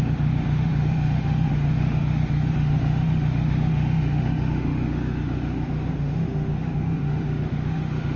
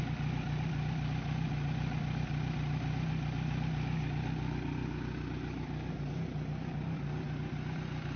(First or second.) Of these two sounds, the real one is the second